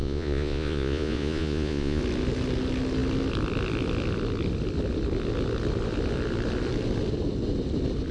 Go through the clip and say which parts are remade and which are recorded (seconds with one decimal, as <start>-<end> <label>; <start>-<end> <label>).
0.0-2.0 remade; 2.0-8.1 recorded